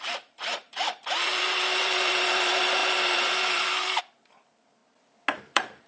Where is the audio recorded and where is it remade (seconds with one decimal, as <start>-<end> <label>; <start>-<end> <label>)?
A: 0.0-4.8 remade; 4.8-5.4 recorded; 5.4-5.9 remade